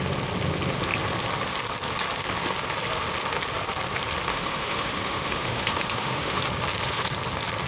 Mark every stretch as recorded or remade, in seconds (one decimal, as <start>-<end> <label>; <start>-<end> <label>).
0.0-4.3 recorded; 4.3-6.4 remade; 6.4-7.7 recorded